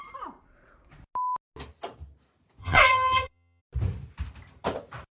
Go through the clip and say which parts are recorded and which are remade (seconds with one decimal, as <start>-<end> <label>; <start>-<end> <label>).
0.0-2.6 recorded; 2.6-3.6 remade; 3.6-5.1 recorded